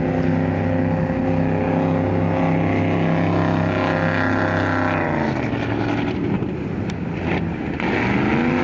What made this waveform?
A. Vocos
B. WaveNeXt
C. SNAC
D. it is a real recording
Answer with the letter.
D